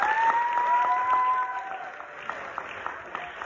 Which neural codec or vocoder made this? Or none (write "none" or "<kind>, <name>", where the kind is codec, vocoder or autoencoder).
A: none